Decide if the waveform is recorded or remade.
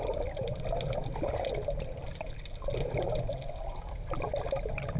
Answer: recorded